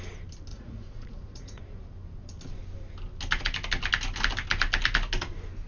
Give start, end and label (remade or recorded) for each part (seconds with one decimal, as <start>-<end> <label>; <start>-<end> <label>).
0.0-0.5 recorded; 0.5-1.6 remade; 1.6-5.7 recorded